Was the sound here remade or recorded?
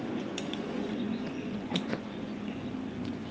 remade